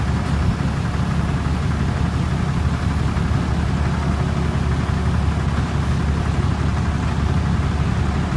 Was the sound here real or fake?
real